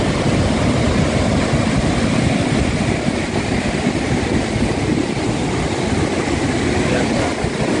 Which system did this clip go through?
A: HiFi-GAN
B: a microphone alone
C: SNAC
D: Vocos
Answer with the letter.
B